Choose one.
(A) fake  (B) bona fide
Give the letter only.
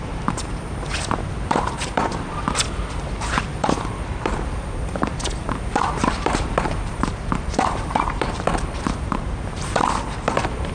A